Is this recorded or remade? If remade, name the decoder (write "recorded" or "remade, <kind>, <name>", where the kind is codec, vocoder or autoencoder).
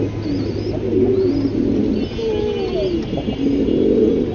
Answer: recorded